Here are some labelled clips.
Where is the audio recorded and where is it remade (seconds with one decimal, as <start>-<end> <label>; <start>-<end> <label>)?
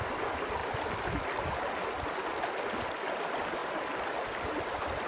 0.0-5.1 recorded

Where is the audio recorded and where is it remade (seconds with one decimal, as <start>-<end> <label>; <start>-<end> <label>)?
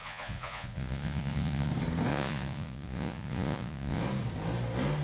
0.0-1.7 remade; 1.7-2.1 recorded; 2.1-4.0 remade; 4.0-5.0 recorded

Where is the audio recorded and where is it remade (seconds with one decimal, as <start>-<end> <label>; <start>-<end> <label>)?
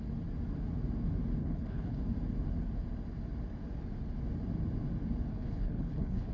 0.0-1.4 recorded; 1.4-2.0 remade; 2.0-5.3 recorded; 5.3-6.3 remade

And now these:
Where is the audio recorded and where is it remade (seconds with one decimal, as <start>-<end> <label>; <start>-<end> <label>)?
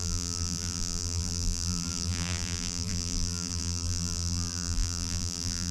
0.0-5.7 remade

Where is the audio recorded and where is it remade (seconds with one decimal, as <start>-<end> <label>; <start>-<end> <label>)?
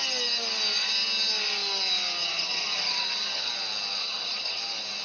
0.0-2.2 recorded; 2.2-3.5 remade; 3.5-4.0 recorded; 4.0-4.6 remade; 4.6-5.0 recorded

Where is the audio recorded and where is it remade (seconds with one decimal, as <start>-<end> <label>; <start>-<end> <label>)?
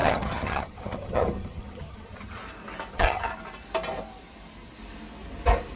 0.0-2.4 remade; 2.4-2.9 recorded; 2.9-3.3 remade; 3.3-5.8 recorded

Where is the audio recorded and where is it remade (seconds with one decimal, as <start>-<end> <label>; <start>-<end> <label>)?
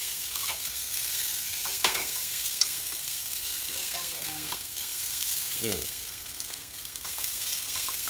0.0-8.1 remade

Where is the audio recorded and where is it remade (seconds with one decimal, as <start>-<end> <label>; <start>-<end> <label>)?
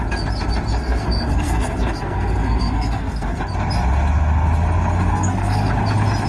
0.0-0.8 recorded; 0.8-3.4 remade; 3.4-5.1 recorded; 5.1-5.7 remade; 5.7-6.3 recorded